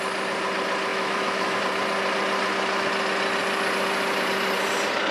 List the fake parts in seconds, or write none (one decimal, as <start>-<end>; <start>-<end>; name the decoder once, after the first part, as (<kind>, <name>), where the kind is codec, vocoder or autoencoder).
0.9-1.6 (autoencoder, DAC-VAE)

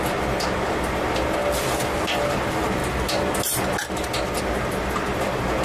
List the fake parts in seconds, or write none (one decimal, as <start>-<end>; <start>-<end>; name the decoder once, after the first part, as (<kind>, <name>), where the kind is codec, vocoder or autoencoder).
none

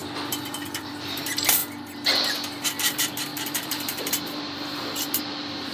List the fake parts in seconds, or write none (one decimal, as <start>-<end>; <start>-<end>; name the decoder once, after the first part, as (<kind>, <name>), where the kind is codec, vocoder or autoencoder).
0.8-1.6 (vocoder, BigVGAN v2); 2.5-5.7